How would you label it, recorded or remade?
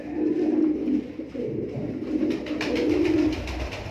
recorded